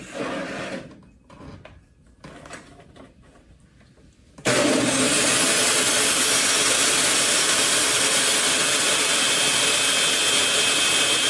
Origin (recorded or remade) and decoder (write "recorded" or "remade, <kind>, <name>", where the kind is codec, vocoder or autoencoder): recorded